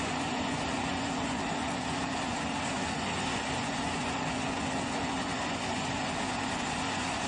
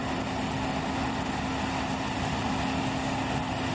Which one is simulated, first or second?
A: first